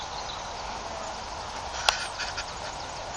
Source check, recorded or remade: recorded